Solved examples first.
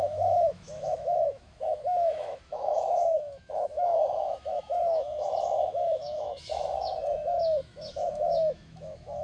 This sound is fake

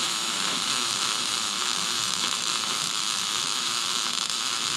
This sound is fake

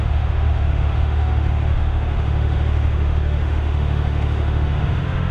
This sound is fake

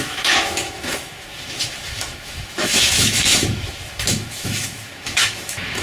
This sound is fake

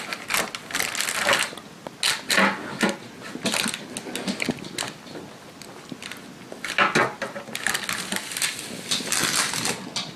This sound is real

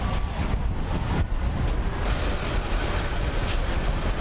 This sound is real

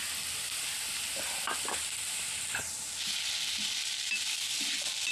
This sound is real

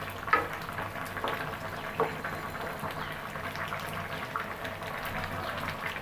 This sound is real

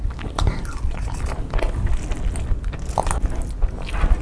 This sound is real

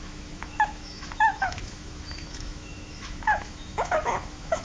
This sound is fake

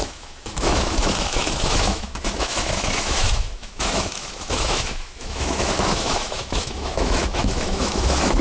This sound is fake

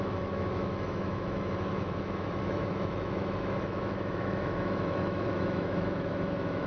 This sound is fake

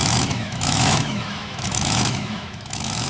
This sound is fake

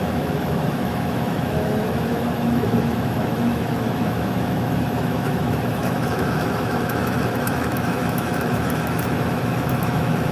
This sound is fake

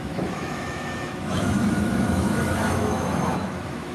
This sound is fake